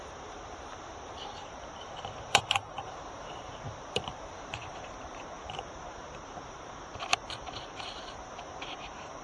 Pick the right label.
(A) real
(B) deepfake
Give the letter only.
B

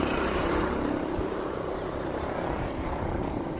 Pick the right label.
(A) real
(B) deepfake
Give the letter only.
B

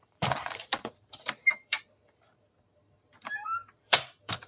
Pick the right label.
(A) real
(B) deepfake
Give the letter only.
B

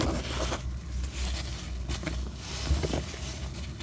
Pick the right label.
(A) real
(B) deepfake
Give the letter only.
A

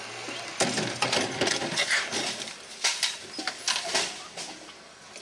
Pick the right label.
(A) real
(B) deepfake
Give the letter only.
A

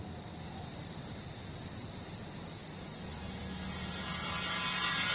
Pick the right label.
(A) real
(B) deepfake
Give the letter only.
A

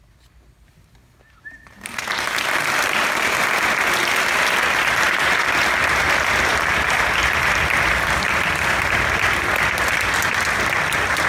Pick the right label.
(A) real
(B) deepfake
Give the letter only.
A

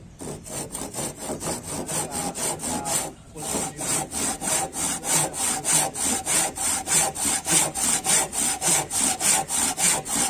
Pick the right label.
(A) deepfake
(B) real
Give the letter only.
B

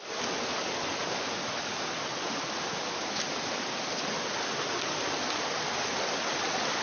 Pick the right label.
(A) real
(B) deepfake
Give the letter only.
A